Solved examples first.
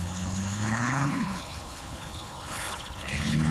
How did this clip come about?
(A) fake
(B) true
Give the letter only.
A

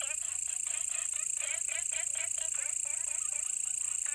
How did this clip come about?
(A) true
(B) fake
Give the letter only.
A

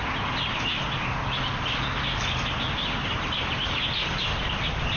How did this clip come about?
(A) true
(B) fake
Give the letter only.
A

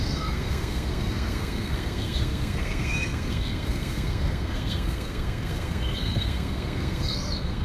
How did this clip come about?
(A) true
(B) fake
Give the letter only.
B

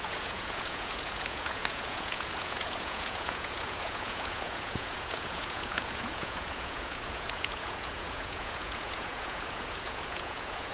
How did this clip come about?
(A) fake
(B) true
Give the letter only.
A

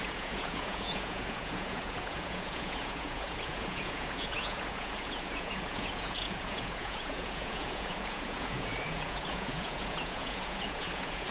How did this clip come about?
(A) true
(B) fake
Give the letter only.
B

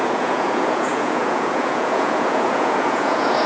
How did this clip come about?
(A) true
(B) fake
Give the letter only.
B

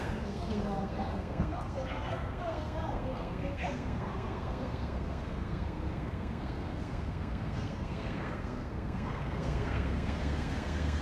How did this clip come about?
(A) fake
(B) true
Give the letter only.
A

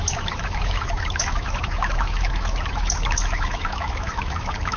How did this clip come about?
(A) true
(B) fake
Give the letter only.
B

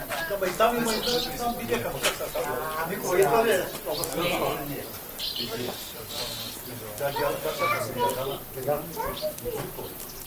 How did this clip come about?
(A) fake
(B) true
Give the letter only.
B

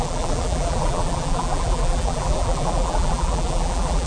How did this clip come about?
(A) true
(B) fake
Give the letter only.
B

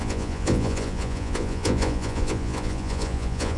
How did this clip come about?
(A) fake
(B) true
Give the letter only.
A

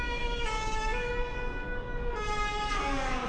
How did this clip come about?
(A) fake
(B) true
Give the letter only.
A